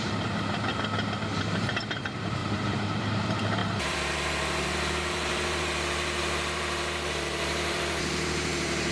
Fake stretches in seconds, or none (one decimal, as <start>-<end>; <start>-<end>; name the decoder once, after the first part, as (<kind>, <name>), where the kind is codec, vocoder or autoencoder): 0.0-0.7 (vocoder, BigVGAN v2); 1.4-8.9